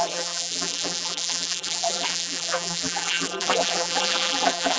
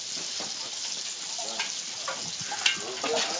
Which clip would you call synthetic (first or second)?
first